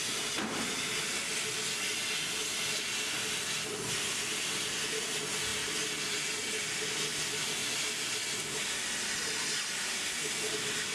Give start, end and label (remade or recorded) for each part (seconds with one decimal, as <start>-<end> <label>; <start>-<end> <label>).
0.0-10.9 recorded